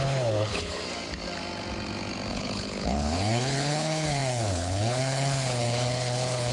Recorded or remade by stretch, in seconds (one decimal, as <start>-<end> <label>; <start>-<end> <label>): 0.0-0.8 remade; 0.8-2.3 recorded; 2.3-6.5 remade